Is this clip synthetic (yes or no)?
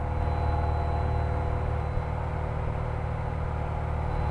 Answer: no